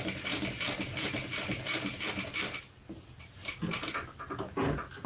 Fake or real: real